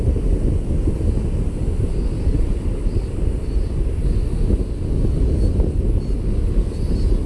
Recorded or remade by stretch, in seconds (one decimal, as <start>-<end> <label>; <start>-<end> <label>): 0.0-2.3 recorded; 2.3-3.0 remade; 3.0-7.3 recorded